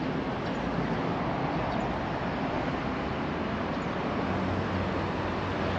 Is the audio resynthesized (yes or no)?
no